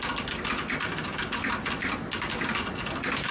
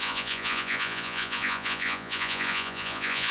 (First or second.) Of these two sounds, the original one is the first